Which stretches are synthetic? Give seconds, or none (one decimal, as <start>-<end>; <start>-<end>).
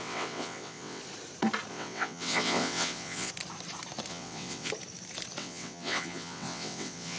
0.0-1.0; 1.7-3.3; 4.1-4.7; 5.4-7.2